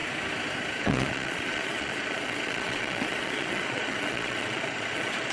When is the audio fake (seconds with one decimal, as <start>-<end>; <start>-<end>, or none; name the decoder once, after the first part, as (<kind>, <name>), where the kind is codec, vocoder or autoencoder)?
0.8-5.3 (vocoder, Vocos)